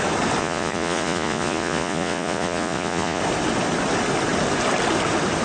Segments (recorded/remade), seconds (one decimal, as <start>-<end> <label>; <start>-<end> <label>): 0.0-0.4 recorded; 0.4-3.2 remade; 3.2-5.4 recorded